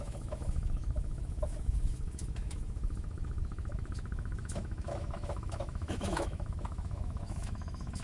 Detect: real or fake fake